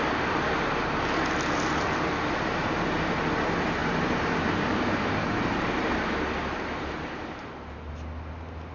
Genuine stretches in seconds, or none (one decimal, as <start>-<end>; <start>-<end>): 0.0-8.7